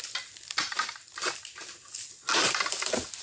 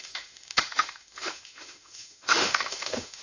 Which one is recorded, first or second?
first